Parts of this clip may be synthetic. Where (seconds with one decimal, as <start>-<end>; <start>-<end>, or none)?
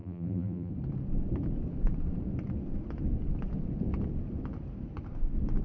0.0-0.7